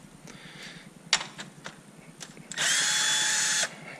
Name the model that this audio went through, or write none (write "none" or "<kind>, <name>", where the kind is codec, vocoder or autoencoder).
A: none